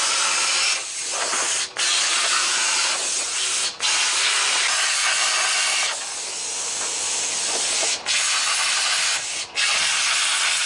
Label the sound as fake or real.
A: real